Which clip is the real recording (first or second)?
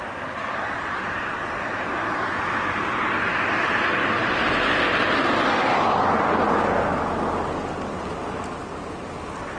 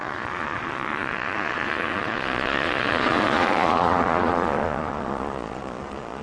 first